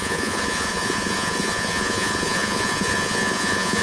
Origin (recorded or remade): remade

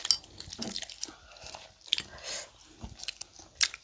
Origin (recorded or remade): recorded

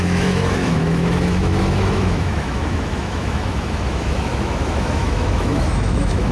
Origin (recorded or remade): remade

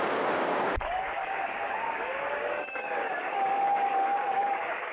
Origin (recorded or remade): remade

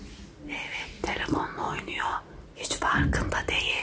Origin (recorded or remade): recorded